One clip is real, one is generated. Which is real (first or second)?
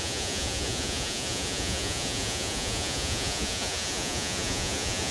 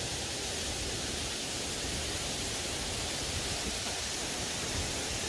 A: second